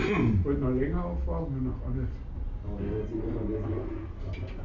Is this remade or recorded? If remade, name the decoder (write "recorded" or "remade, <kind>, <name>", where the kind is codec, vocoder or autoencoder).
recorded